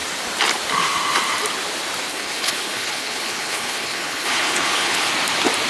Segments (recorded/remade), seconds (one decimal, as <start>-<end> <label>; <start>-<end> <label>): 0.0-2.1 recorded; 2.1-5.1 remade; 5.1-5.7 recorded